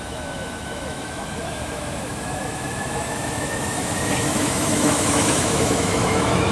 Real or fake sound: fake